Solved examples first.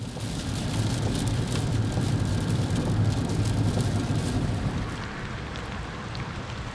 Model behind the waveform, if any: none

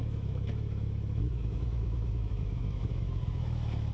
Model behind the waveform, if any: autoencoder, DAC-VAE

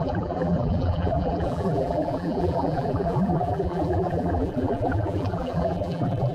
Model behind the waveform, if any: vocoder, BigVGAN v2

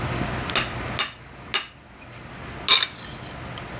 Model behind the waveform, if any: none